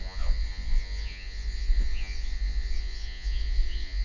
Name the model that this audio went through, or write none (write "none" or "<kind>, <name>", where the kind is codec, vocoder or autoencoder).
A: vocoder, Vocos